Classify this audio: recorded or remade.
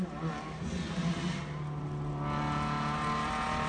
recorded